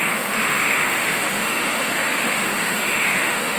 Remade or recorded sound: remade